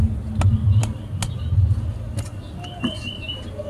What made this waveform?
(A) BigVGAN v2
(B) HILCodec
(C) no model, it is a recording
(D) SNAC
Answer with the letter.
C